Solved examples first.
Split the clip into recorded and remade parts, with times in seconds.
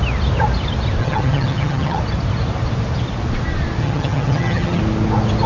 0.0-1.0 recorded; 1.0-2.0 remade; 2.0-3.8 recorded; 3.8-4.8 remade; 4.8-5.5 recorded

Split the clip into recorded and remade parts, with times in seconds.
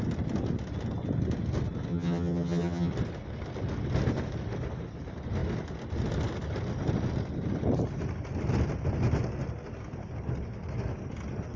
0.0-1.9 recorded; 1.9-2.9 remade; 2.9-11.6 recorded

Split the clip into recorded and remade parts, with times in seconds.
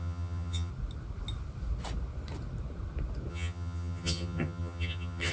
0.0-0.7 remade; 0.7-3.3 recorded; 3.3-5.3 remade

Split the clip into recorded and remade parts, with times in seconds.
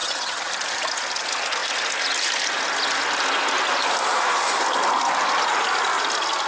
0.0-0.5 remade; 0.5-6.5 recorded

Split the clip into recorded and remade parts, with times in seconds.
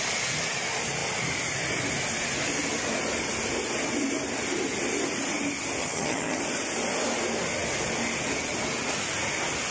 0.0-5.8 recorded; 5.8-6.4 remade; 6.4-9.7 recorded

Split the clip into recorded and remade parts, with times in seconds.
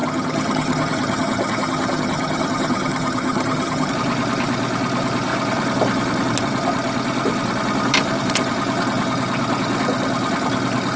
0.0-3.9 remade; 3.9-11.0 recorded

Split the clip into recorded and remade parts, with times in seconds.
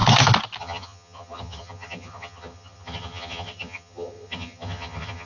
0.0-0.6 recorded; 0.6-5.3 remade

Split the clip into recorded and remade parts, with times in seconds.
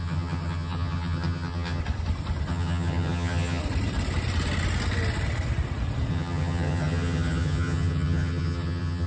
0.0-1.8 remade; 1.8-2.5 recorded; 2.5-3.6 remade; 3.6-6.1 recorded; 6.1-9.1 remade